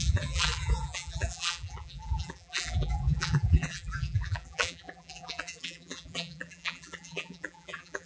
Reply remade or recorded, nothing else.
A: remade